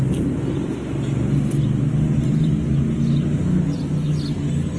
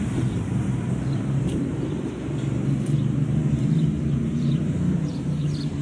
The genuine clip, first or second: first